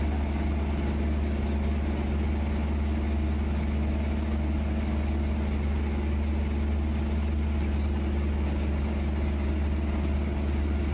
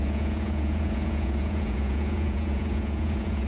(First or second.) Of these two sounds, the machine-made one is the second